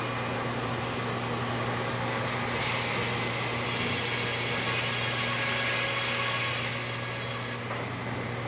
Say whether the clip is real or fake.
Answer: real